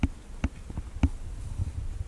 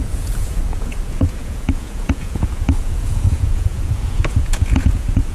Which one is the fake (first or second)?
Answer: second